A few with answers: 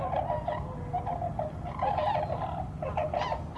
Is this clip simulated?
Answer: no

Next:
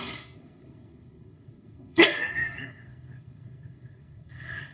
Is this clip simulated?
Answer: yes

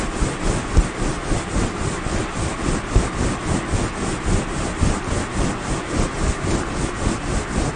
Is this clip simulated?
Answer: no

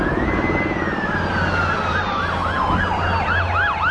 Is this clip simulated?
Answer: no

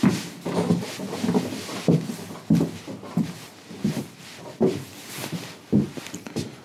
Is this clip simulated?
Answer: no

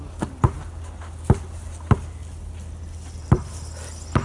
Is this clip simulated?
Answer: no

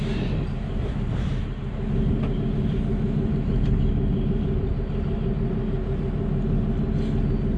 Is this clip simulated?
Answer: no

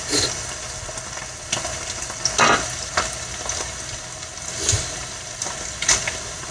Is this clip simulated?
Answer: no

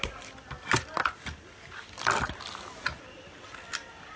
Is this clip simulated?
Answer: no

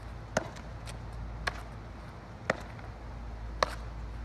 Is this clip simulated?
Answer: no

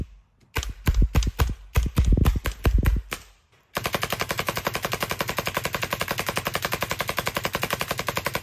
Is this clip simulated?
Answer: no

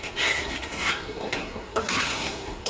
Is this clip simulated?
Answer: yes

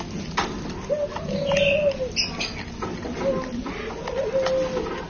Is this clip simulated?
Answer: no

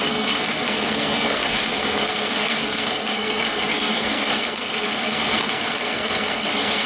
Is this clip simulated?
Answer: yes